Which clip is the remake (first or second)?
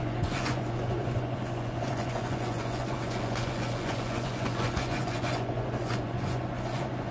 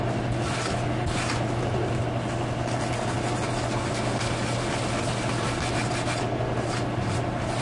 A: first